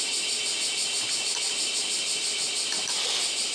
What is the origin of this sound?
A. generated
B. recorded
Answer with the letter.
B